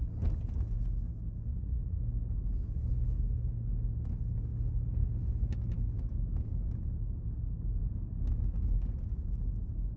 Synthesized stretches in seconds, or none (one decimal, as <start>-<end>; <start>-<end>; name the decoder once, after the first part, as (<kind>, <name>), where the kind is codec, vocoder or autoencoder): 1.5-2.0 (vocoder, Vocos)

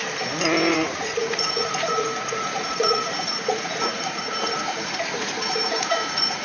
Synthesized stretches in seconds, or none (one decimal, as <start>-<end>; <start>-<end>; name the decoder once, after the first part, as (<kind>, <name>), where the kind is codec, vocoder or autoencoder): 0.7-6.4 (vocoder, Vocos)

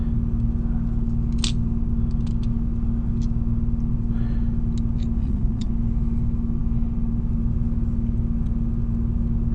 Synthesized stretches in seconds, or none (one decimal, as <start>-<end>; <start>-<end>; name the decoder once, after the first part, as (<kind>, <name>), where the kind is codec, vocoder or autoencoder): 5.2-5.7 (vocoder, Vocos)

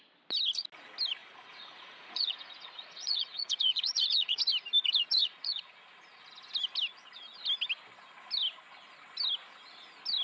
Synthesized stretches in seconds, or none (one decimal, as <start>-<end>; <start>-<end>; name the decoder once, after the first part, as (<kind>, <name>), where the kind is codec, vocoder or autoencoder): 1.2-4.4 (vocoder, Vocos); 5.2-6.2

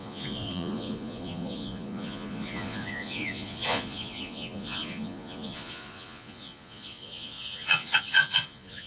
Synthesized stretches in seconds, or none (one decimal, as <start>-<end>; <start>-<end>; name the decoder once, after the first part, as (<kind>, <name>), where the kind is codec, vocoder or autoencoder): 0.0-8.9 (vocoder, Vocos)

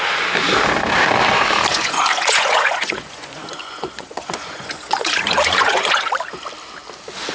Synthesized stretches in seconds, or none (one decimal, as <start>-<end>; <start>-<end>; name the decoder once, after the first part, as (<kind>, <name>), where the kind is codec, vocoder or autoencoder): 1.7-6.1 (vocoder, Vocos)

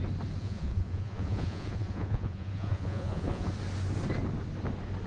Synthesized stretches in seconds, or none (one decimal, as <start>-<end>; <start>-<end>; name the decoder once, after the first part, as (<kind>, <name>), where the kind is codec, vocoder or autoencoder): 0.4-3.5 (vocoder, Vocos)